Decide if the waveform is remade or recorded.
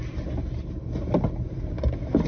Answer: recorded